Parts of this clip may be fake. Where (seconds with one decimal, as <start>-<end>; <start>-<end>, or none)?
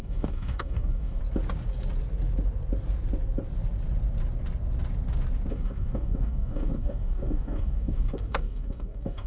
0.0-1.2; 5.5-9.3